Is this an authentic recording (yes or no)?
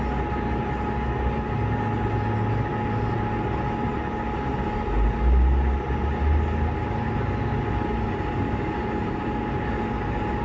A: yes